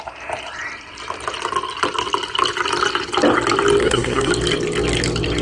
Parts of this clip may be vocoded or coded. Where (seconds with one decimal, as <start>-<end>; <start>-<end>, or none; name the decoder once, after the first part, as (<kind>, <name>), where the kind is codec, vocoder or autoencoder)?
3.8-4.3 (codec, SNAC)